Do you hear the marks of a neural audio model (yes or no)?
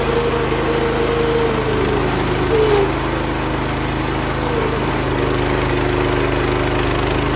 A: no